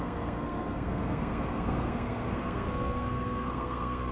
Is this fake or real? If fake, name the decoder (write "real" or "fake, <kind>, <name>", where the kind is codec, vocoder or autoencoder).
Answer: fake, codec, SNAC